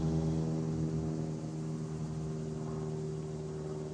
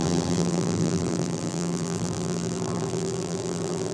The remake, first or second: second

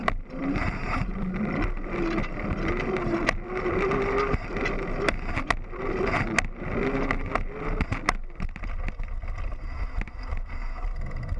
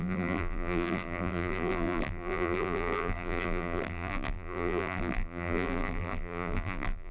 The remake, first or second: second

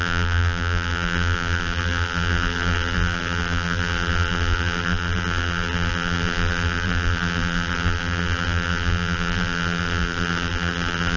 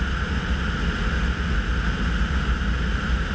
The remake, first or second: first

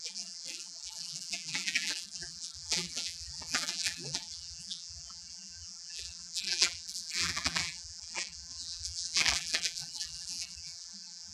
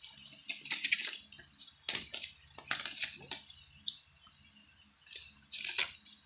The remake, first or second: first